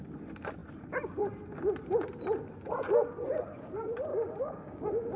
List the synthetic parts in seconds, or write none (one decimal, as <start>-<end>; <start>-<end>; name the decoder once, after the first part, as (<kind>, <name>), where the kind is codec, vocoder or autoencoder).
4.1-5.2 (codec, DAC)